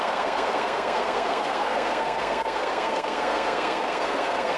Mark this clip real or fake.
fake